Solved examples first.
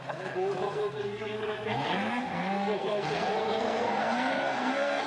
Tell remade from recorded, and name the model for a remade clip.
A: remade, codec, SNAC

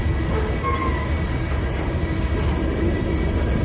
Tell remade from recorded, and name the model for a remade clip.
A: recorded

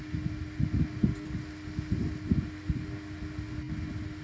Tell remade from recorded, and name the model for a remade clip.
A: recorded